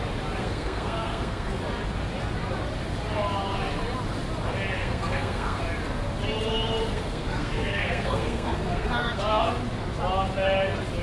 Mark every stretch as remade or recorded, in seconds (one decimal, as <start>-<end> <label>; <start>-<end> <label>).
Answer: 0.0-0.4 recorded; 0.4-1.6 remade; 1.6-4.8 recorded; 4.8-5.6 remade; 5.6-6.9 recorded; 6.9-9.5 remade; 9.5-11.0 recorded